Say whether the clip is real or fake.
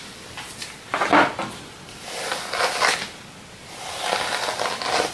real